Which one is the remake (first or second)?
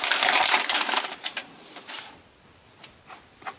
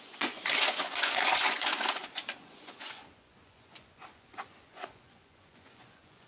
second